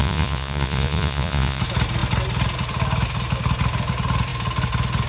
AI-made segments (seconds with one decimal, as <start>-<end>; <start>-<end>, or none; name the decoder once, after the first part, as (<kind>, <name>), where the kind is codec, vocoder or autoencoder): 0.0-1.6 (vocoder, Vocos)